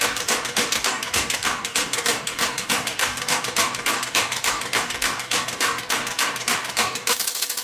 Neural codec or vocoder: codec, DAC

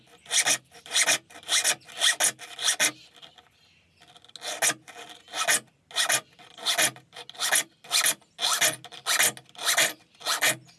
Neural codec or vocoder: none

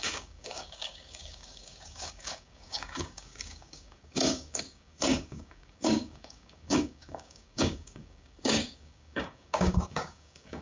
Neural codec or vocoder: codec, DAC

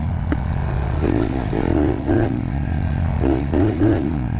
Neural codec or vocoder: vocoder, Vocos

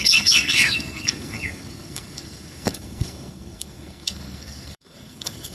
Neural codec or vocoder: codec, SNAC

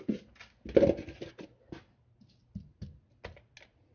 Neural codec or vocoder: none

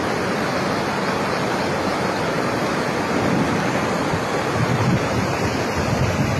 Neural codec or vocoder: none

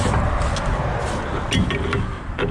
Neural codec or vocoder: none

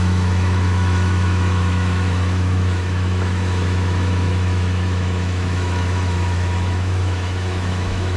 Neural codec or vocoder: autoencoder, DAC-VAE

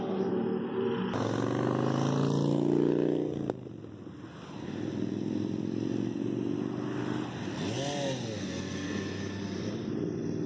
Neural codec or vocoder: none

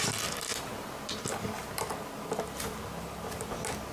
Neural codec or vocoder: none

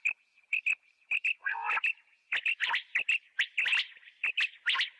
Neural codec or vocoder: none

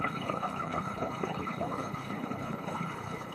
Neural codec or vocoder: codec, HILCodec